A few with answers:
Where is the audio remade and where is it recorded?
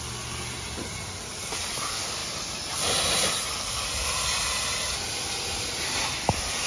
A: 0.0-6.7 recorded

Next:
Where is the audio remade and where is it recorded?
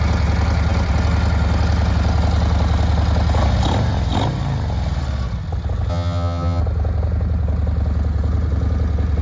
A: 0.0-5.9 recorded; 5.9-6.6 remade; 6.6-9.2 recorded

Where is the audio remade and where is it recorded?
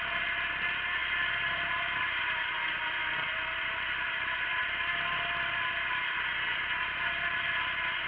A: 0.0-8.1 recorded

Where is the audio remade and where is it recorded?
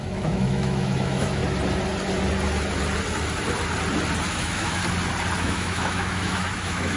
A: 0.0-1.4 remade; 1.4-4.3 recorded; 4.3-4.8 remade; 4.8-5.4 recorded; 5.4-7.0 remade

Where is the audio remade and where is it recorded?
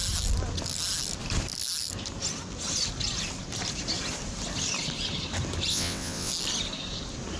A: 0.0-5.7 recorded; 5.7-6.3 remade; 6.3-7.4 recorded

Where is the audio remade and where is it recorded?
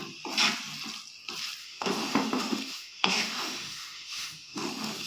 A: 0.0-1.6 recorded; 1.6-5.1 remade